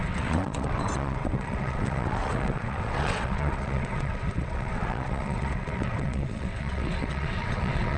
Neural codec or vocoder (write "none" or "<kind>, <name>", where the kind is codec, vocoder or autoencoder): vocoder, WaveNeXt